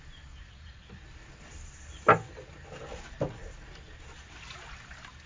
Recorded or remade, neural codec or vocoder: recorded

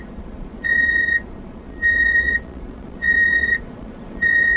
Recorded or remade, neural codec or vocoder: remade, vocoder, Vocos